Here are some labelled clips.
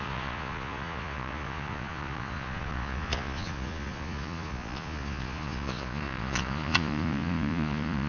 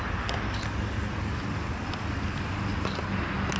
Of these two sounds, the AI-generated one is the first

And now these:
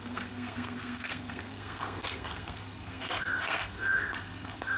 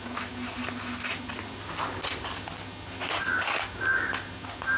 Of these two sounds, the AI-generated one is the first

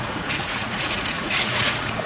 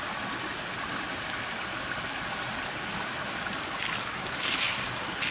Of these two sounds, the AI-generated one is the first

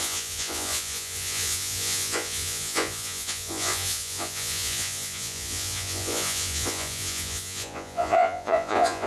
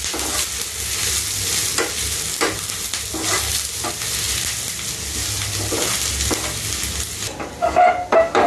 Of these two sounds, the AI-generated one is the first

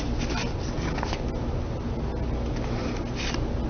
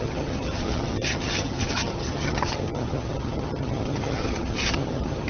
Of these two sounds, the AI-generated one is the second